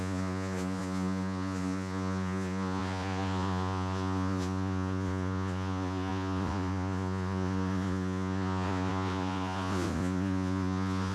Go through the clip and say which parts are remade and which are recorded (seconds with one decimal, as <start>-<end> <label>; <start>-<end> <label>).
0.0-11.1 remade